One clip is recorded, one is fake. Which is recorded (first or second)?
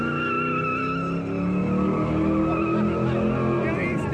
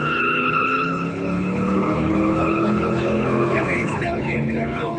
first